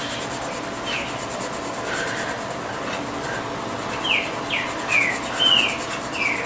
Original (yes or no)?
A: yes